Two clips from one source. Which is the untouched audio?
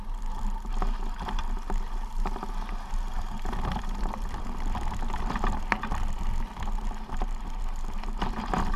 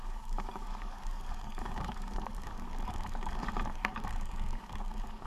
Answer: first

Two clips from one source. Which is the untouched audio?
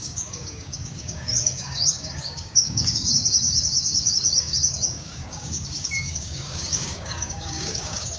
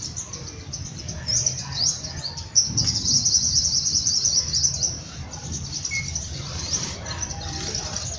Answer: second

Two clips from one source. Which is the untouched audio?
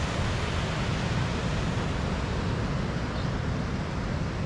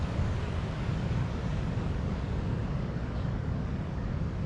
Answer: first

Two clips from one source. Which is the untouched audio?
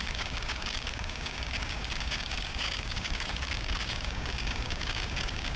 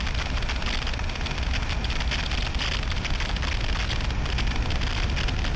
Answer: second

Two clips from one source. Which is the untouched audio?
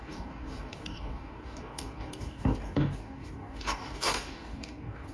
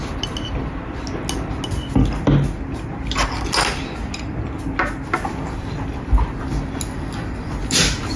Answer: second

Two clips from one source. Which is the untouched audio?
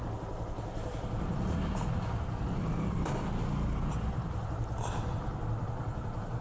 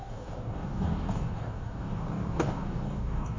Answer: first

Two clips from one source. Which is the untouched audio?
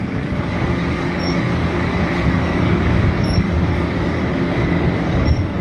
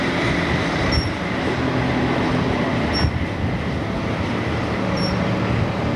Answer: second